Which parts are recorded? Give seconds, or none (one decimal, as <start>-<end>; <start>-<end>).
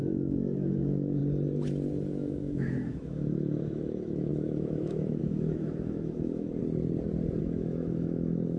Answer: 1.2-2.1; 6.6-7.4